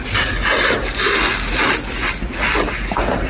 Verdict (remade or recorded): recorded